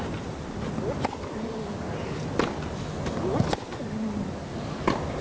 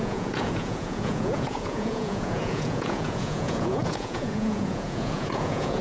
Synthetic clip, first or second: second